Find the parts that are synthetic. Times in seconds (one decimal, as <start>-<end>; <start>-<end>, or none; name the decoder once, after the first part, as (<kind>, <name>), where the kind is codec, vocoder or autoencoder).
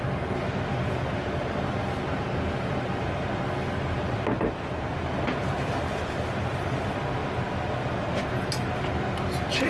none